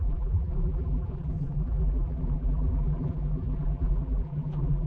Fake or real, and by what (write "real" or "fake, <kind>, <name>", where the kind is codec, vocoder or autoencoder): fake, vocoder, BigVGAN v2